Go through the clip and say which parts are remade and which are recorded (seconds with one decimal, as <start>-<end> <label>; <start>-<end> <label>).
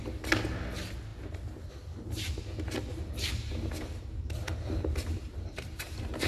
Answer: 0.0-2.9 recorded; 2.9-6.3 remade